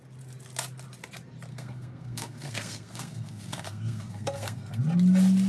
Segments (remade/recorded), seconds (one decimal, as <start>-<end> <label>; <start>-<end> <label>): 0.0-1.5 recorded; 1.5-4.8 remade; 4.8-5.5 recorded